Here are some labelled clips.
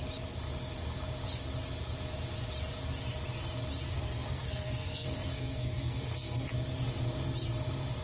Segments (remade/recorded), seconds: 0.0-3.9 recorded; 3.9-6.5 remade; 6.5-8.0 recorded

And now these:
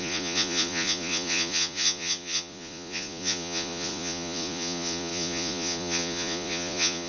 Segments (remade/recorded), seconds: 0.0-7.1 remade

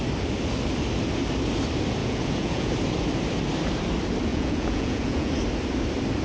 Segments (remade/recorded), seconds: 0.0-2.0 recorded; 2.0-2.7 remade; 2.7-4.3 recorded; 4.3-5.3 remade; 5.3-6.2 recorded

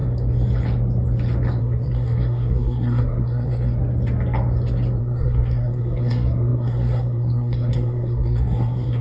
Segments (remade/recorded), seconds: 0.0-1.6 recorded; 1.6-3.8 remade; 3.8-5.0 recorded; 5.0-9.0 remade

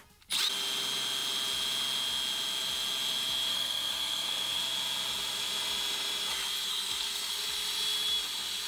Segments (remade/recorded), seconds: 0.0-3.5 recorded; 3.5-4.6 remade; 4.6-6.7 recorded; 6.7-7.3 remade; 7.3-8.7 recorded

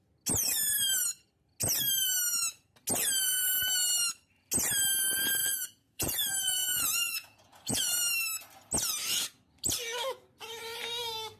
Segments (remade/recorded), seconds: 0.0-5.4 recorded; 5.4-7.9 remade; 7.9-11.4 recorded

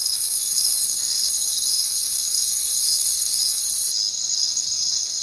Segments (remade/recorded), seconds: 0.0-3.6 remade; 3.6-4.1 recorded; 4.1-5.2 remade